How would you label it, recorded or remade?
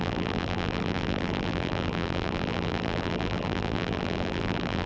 remade